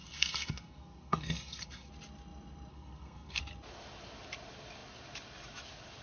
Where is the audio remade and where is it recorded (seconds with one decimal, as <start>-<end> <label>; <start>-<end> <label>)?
0.0-1.9 remade; 1.9-2.7 recorded; 2.7-3.4 remade; 3.4-6.0 recorded